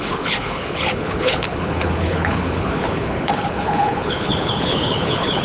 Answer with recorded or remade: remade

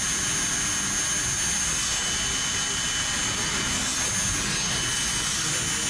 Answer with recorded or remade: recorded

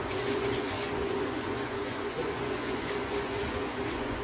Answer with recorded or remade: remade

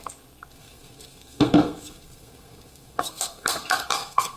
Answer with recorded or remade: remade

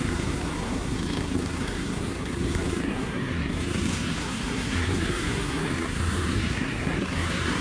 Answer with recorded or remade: remade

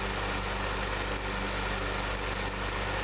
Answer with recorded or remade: recorded